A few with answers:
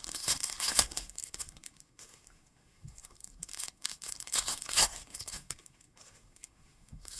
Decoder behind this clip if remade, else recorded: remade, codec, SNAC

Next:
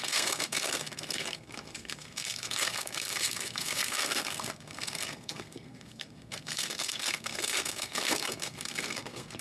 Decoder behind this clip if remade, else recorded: remade, codec, SNAC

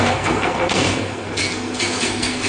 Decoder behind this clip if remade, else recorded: remade, codec, SNAC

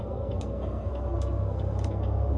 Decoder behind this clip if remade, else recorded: remade, codec, SNAC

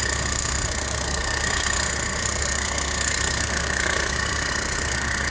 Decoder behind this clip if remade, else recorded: remade, codec, SNAC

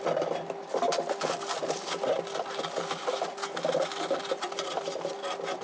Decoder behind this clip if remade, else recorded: recorded